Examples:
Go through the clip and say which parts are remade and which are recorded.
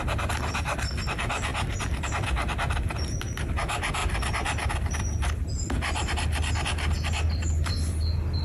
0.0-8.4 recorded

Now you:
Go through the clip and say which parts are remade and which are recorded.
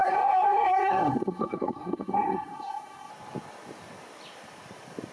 0.0-3.1 remade; 3.1-5.1 recorded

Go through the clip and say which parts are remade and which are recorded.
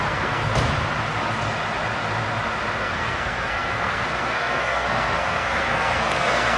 0.0-0.5 remade; 0.5-2.8 recorded; 2.8-6.6 remade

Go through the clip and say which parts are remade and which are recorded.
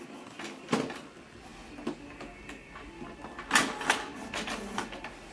0.0-5.3 recorded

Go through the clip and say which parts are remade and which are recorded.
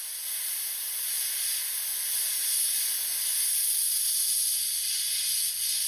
0.0-5.9 recorded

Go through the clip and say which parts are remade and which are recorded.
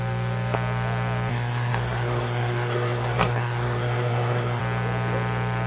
0.0-1.3 recorded; 1.3-4.6 remade; 4.6-5.7 recorded